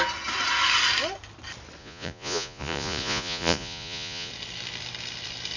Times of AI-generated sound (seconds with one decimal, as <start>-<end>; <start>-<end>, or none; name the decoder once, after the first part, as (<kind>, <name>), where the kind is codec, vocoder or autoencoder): 1.8-4.3 (vocoder, Vocos)